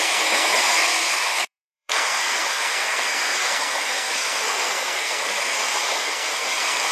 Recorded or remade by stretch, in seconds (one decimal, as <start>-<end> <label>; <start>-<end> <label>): 0.0-6.9 remade